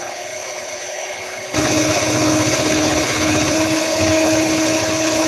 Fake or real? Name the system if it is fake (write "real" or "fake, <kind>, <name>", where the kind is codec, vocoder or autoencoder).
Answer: fake, codec, HILCodec